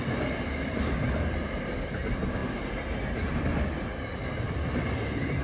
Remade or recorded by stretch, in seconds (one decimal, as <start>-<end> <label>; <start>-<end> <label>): 0.0-5.4 recorded

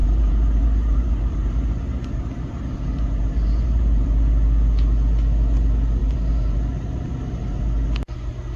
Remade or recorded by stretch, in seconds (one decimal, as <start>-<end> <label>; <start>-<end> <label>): 0.0-4.3 remade; 4.3-6.0 recorded; 6.0-7.6 remade; 7.6-8.6 recorded

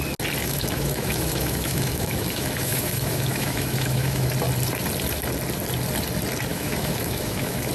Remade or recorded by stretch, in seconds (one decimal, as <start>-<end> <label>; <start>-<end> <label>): 0.0-0.4 recorded; 0.4-4.3 remade; 4.3-6.5 recorded; 6.5-7.7 remade

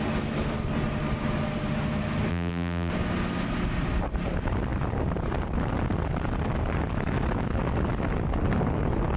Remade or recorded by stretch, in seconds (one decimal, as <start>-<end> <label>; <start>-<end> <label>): 0.0-2.3 recorded; 2.3-2.9 remade; 2.9-9.2 recorded